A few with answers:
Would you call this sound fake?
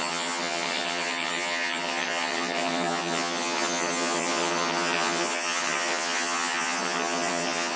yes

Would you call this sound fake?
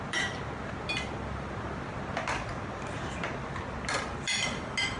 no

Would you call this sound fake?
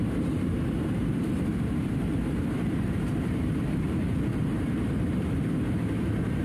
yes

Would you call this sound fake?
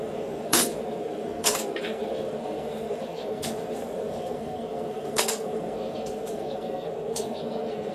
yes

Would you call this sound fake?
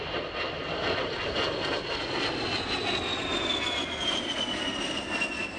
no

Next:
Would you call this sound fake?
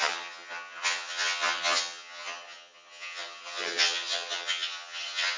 yes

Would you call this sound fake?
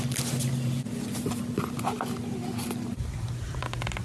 yes